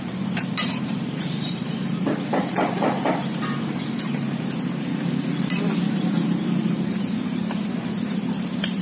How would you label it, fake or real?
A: fake